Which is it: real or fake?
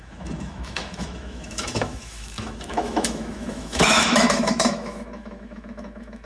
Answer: fake